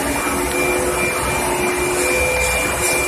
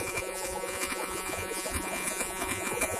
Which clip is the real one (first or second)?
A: first